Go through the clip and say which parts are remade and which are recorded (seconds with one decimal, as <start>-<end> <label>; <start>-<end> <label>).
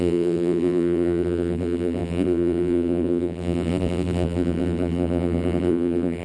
0.0-6.2 remade